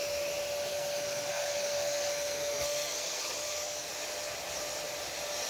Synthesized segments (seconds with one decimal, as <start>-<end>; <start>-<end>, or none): 0.7-3.9